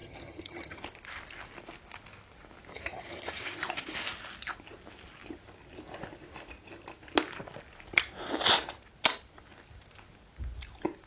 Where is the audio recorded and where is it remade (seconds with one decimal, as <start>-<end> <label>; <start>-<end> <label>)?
0.0-0.8 remade; 0.8-2.7 recorded; 2.7-3.4 remade; 3.4-11.1 recorded